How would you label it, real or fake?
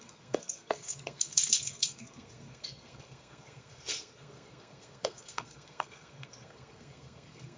fake